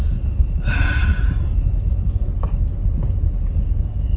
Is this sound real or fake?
real